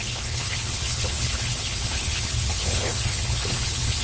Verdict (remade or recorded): remade